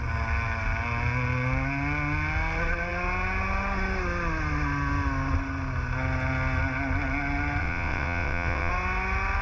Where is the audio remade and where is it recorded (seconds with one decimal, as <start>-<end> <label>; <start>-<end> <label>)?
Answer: 0.0-7.6 recorded; 7.6-8.7 remade; 8.7-9.4 recorded